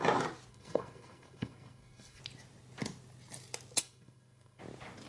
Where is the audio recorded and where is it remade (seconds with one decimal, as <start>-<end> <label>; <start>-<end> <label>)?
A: 0.0-0.5 recorded; 0.5-2.2 remade; 2.2-3.8 recorded; 3.8-4.6 remade; 4.6-5.1 recorded